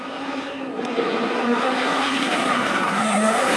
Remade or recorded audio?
remade